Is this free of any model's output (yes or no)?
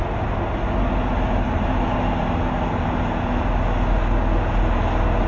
yes